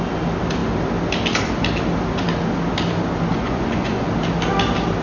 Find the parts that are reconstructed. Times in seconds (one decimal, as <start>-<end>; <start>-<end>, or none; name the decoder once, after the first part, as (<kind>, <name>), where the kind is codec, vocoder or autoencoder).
3.3-4.1 (vocoder, Vocos)